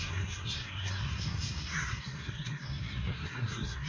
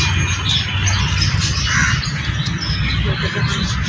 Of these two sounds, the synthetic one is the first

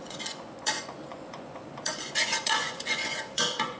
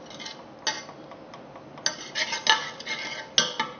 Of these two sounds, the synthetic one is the first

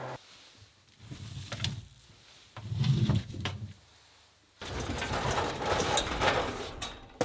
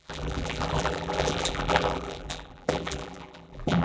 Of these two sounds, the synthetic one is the second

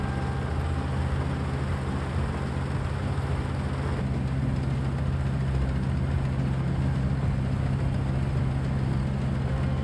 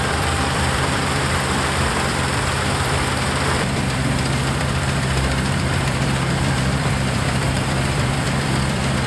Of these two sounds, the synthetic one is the second